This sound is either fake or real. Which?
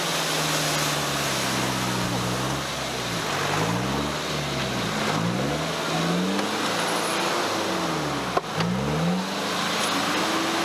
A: real